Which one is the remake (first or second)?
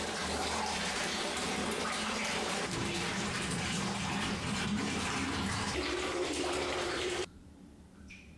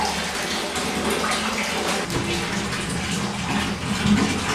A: first